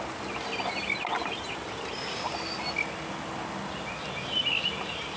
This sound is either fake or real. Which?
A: real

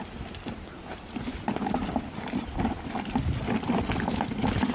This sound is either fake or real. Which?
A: real